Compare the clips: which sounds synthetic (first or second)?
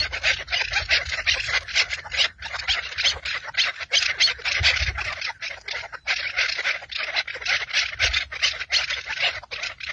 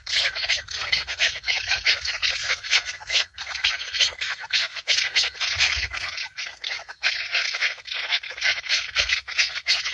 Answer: second